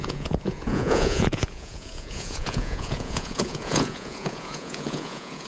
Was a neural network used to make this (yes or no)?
yes